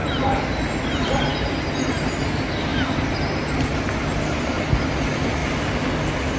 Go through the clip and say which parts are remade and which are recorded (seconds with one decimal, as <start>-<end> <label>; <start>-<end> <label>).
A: 0.0-6.4 recorded